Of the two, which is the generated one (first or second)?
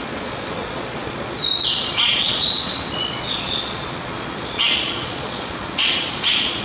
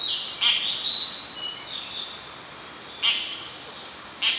first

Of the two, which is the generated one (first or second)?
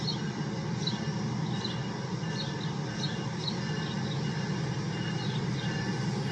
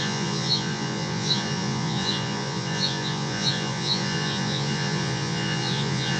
second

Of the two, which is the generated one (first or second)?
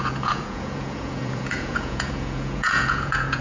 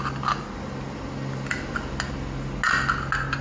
first